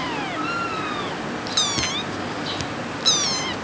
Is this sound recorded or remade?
recorded